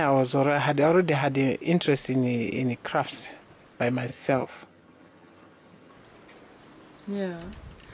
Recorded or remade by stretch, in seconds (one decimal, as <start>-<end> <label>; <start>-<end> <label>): 0.0-4.1 recorded; 4.1-5.9 remade; 5.9-7.9 recorded